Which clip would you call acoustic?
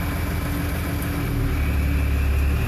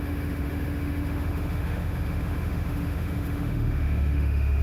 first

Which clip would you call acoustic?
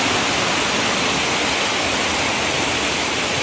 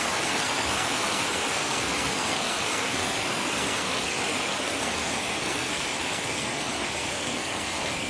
first